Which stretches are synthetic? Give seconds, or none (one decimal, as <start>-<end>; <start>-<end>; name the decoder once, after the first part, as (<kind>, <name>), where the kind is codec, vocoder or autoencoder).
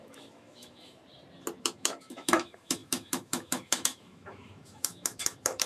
0.0-1.0 (autoencoder, DAC-VAE); 1.6-5.7